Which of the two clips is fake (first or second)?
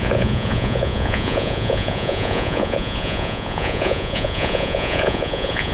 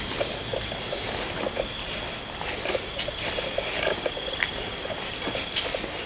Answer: first